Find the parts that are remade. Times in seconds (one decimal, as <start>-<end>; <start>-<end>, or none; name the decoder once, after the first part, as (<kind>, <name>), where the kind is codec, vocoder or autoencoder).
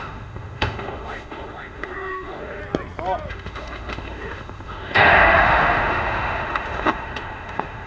0.0-2.6 (autoencoder, DAC-VAE); 3.3-7.9